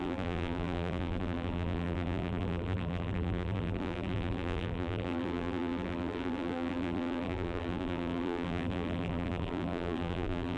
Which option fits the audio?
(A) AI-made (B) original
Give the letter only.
A